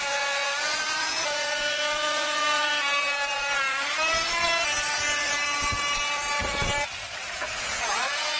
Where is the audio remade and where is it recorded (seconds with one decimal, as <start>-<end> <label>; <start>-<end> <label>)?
0.0-2.7 remade; 2.7-7.3 recorded; 7.3-8.4 remade